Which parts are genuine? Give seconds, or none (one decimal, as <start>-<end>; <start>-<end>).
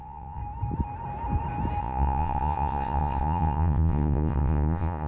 0.4-1.8